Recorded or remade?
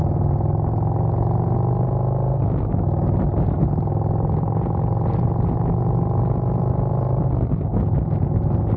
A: recorded